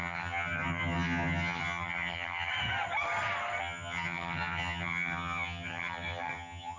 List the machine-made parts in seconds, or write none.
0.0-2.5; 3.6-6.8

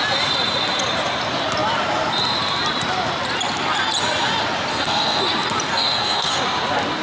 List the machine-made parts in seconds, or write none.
4.7-5.2; 5.7-6.4

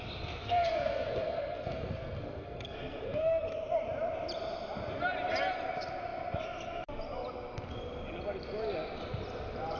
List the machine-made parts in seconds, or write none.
0.4-3.5

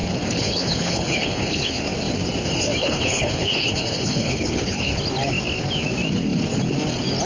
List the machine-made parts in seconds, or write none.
0.0-1.8; 2.8-5.0

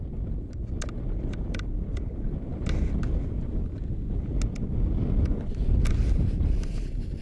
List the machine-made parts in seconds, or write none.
none

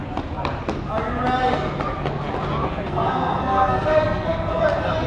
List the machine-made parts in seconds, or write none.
2.6-4.6

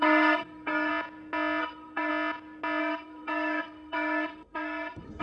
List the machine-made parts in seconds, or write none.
0.0-0.9; 1.6-2.1; 2.8-5.2

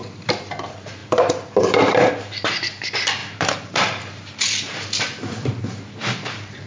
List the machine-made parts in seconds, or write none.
0.0-6.7